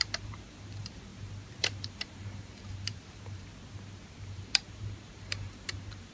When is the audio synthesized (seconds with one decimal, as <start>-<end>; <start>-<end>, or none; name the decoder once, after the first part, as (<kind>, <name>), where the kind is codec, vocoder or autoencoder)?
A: 0.0-1.1 (vocoder, BigVGAN v2); 1.6-3.5; 4.2-6.1